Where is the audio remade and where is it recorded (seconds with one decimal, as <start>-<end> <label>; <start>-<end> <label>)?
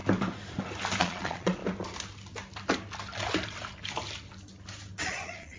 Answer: 0.0-1.0 recorded; 1.0-1.6 remade; 1.6-5.0 recorded; 5.0-5.6 remade